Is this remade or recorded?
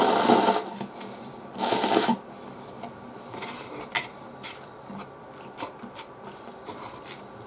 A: recorded